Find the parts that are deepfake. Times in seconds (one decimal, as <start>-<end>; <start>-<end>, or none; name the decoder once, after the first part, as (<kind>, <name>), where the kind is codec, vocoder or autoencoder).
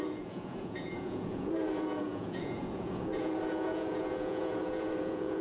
0.0-5.4 (vocoder, Vocos)